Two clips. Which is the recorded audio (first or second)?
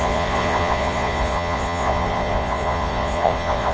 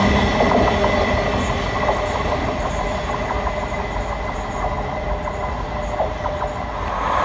second